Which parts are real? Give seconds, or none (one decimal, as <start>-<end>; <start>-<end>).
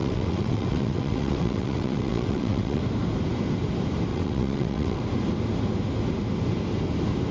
2.8-4.1; 5.0-7.3